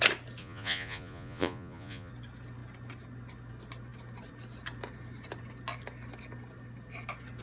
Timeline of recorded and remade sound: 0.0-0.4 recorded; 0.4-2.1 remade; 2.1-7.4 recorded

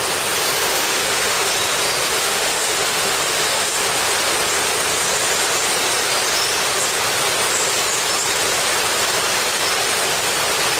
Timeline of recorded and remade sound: 0.0-0.7 recorded; 0.7-1.5 remade; 1.5-2.2 recorded; 2.2-3.8 remade; 3.8-10.8 recorded